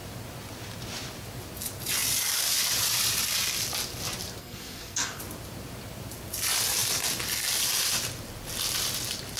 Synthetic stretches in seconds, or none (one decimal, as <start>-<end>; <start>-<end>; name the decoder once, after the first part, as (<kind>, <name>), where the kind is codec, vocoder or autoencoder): 4.4-5.2 (codec, SNAC)